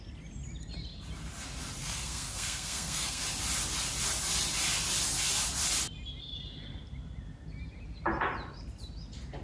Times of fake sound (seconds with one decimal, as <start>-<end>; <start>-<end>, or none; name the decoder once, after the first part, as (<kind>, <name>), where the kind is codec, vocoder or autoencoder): 1.8-3.2 (codec, SNAC)